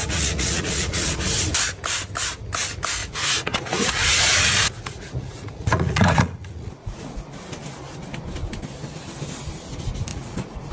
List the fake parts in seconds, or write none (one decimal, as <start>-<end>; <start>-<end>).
0.0-1.1; 3.0-7.3; 10.1-10.7